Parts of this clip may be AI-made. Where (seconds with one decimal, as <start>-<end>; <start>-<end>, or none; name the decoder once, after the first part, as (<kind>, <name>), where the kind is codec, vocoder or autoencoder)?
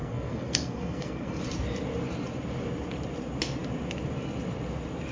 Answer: 0.0-1.4 (codec, SNAC)